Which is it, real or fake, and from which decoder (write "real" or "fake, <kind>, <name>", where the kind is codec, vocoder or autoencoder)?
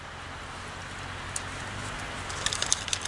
real